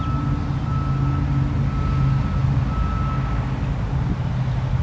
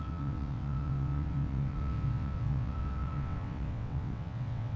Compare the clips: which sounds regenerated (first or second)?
second